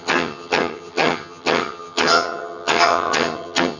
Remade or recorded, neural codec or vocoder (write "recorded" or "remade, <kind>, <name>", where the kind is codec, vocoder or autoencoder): remade, vocoder, HiFi-GAN